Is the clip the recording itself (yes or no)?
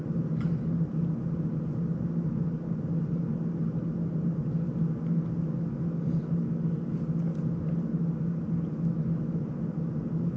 yes